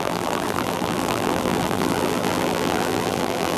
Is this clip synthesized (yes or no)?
yes